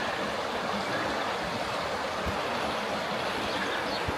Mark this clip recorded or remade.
recorded